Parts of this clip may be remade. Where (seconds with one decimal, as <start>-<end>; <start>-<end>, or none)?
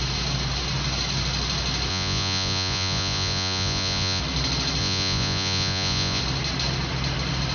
1.9-4.2; 4.8-6.2